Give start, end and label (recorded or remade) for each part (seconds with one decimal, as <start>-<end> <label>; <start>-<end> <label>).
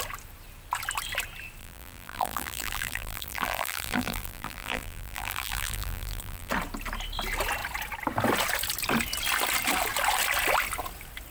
0.0-1.6 recorded; 1.6-6.5 remade; 6.5-11.3 recorded